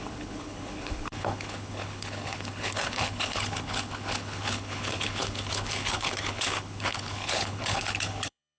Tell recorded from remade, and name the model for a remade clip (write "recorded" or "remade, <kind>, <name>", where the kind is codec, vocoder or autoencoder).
remade, codec, HILCodec